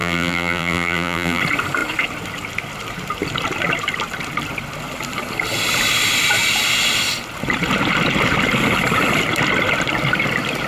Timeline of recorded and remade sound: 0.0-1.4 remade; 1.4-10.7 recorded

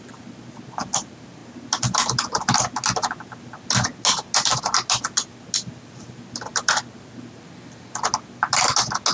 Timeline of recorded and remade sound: 0.0-9.1 recorded

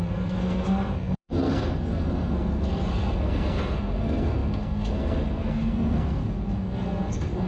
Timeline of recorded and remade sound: 0.0-7.5 remade

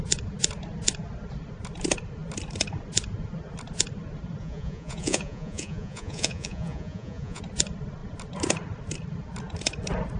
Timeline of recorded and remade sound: 0.0-4.4 recorded; 4.4-7.4 remade; 7.4-10.2 recorded